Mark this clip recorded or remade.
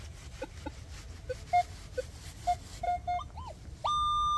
recorded